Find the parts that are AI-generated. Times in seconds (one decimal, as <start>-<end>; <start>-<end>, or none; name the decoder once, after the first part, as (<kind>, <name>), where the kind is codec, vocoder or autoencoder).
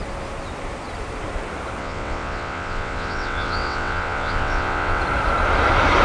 1.8-5.0 (vocoder, WaveNeXt)